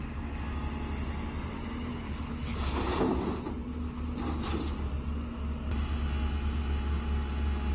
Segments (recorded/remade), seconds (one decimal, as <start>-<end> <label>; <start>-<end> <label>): 0.0-1.9 recorded; 1.9-2.6 remade; 2.6-7.7 recorded